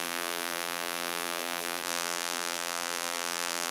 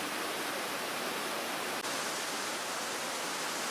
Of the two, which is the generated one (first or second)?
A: first